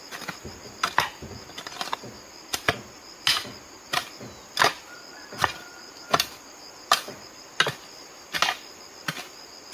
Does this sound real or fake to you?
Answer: real